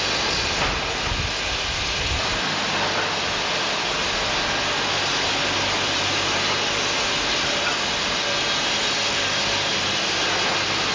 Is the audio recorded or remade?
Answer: recorded